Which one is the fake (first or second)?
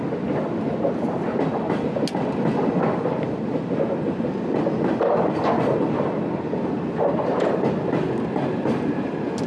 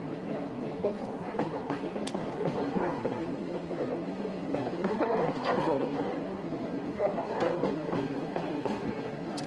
second